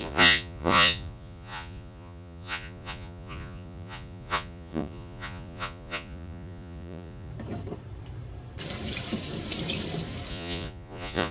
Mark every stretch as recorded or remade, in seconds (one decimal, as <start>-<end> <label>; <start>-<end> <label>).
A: 0.0-7.3 remade; 7.3-10.3 recorded; 10.3-11.3 remade